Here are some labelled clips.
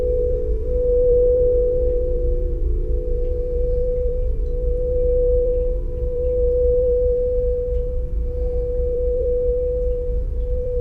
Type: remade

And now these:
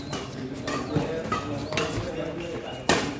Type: recorded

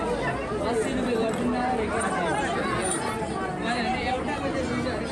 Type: recorded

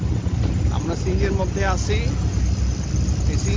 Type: recorded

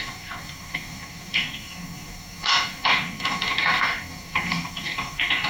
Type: remade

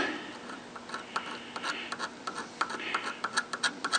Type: recorded